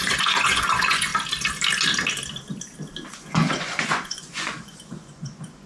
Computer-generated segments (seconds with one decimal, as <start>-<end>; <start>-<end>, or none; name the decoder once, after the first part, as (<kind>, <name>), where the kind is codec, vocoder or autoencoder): 0.0-1.1 (vocoder, Vocos); 3.1-5.7